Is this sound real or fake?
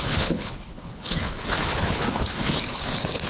fake